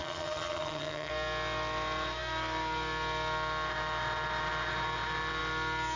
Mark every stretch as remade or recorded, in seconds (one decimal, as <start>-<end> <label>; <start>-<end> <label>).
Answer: 0.0-1.1 remade; 1.1-6.0 recorded